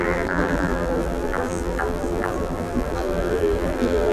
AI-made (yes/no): yes